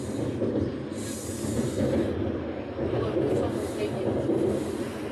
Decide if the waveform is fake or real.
real